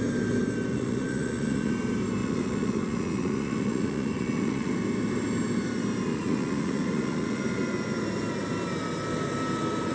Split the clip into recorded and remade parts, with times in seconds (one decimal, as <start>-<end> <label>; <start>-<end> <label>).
0.0-0.7 recorded; 0.7-1.7 remade; 1.7-2.2 recorded; 2.2-4.7 remade; 4.7-6.1 recorded; 6.1-7.4 remade; 7.4-9.9 recorded